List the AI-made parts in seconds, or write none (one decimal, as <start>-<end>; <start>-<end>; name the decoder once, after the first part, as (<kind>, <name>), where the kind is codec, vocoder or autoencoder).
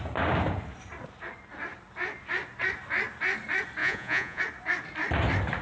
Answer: 3.8-4.4 (vocoder, Vocos)